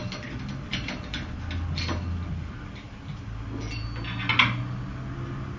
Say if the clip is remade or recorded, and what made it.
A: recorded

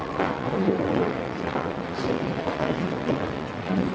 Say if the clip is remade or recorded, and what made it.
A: remade, vocoder, WaveNeXt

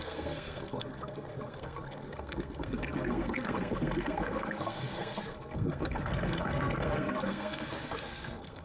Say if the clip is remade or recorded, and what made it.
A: remade, codec, SNAC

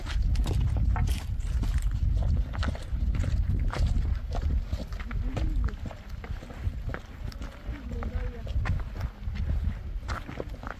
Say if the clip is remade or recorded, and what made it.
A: recorded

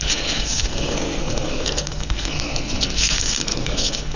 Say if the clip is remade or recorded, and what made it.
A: remade, codec, SNAC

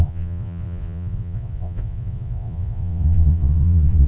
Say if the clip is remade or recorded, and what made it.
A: remade, vocoder, Vocos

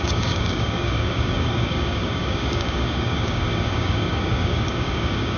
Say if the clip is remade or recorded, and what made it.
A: remade, codec, DAC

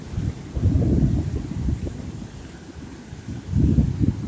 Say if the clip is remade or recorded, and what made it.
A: recorded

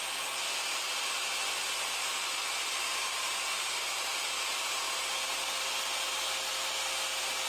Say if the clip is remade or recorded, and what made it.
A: recorded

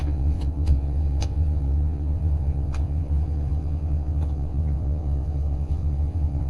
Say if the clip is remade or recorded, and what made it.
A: remade, vocoder, WaveNeXt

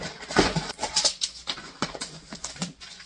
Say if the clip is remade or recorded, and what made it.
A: remade, vocoder, Vocos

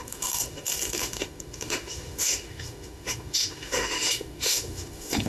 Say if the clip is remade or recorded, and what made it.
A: remade, autoencoder, DAC-VAE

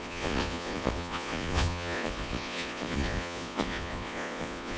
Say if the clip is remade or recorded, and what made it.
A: remade, vocoder, Vocos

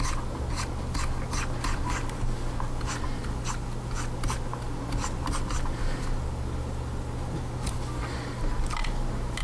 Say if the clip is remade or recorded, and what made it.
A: recorded